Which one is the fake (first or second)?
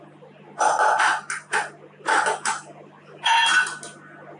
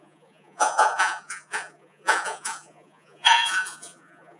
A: second